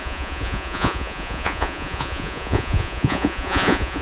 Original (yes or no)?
no